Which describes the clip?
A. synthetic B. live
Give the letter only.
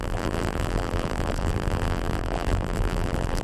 A